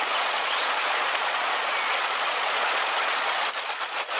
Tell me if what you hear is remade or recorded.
remade